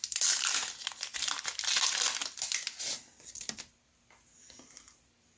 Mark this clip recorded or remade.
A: recorded